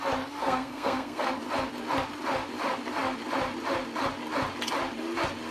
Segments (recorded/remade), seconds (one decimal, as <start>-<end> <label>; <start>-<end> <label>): 0.0-0.4 recorded; 0.4-1.3 remade; 1.3-5.5 recorded